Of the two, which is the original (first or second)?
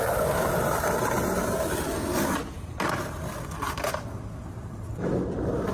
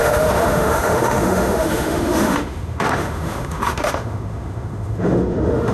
first